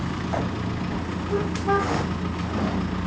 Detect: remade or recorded recorded